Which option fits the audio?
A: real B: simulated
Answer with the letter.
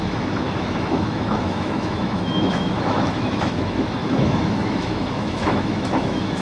B